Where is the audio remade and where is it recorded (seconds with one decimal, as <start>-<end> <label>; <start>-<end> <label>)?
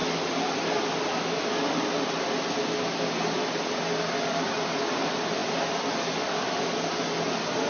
0.0-7.7 recorded